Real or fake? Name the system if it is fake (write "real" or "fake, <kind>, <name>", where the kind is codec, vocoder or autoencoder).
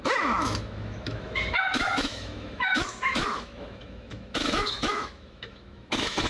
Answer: fake, autoencoder, DAC-VAE